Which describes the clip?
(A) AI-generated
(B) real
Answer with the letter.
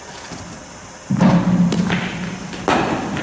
B